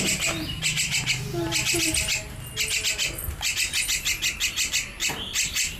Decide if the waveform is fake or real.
real